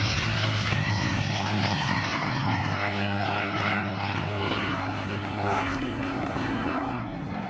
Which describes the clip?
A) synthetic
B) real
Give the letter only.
A